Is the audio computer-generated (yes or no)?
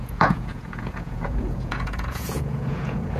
yes